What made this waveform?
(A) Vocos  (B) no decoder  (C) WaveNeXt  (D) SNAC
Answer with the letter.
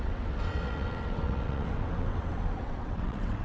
C